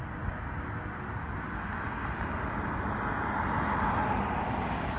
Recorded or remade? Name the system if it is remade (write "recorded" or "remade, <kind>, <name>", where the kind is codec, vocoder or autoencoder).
recorded